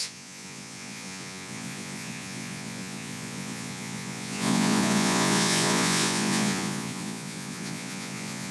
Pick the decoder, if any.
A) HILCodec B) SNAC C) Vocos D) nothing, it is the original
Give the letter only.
C